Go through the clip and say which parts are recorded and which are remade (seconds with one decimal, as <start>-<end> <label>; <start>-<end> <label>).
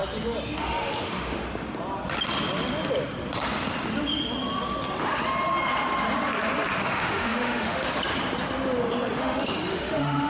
0.0-0.6 recorded; 0.6-1.5 remade; 1.5-6.8 recorded; 6.8-7.9 remade; 7.9-9.2 recorded; 9.2-10.3 remade